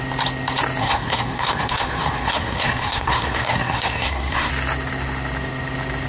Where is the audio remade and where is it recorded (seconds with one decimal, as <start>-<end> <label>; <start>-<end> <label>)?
0.0-0.8 recorded; 0.8-4.5 remade; 4.5-6.1 recorded